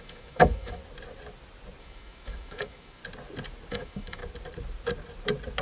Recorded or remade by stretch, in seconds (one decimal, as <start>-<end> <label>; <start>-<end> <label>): 0.0-0.8 remade; 0.8-1.8 recorded; 1.8-3.0 remade; 3.0-3.7 recorded; 3.7-4.2 remade; 4.2-5.6 recorded